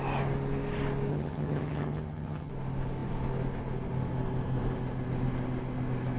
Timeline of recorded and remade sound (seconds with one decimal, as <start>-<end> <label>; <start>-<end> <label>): 0.0-1.1 recorded; 1.1-2.5 remade; 2.5-6.2 recorded